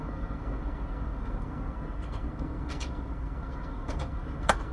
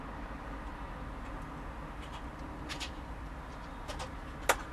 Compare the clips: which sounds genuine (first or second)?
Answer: second